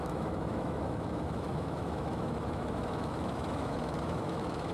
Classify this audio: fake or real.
fake